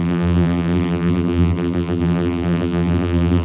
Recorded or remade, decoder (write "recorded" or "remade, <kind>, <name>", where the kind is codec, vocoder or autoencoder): remade, vocoder, BigVGAN v2